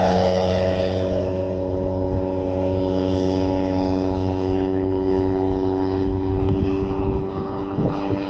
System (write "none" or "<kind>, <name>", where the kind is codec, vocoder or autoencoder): codec, HILCodec